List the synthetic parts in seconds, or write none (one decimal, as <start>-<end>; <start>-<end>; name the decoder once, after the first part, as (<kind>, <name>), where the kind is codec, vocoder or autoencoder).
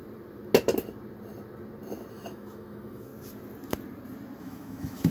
2.1-3.1 (autoencoder, DAC-VAE); 4.4-5.1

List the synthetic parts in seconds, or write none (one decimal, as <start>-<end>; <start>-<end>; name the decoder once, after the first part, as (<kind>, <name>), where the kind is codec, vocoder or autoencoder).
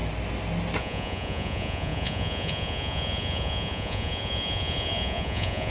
0.8-5.7 (vocoder, Vocos)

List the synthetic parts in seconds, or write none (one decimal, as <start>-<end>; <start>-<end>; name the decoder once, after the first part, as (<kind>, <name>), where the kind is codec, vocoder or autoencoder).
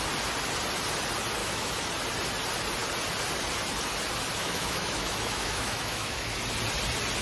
1.4-1.9 (autoencoder, DAC-VAE); 4.4-6.4